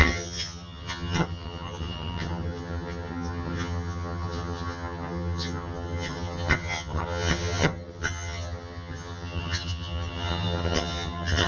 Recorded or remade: remade